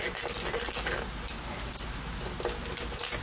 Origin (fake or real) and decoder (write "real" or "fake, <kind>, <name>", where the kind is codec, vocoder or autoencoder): real